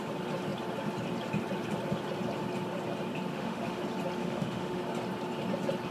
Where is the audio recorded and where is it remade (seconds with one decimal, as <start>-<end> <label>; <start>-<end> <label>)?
0.0-3.3 recorded; 3.3-3.8 remade; 3.8-4.2 recorded; 4.2-4.8 remade; 4.8-5.9 recorded